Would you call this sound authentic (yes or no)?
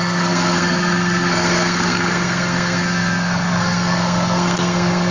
no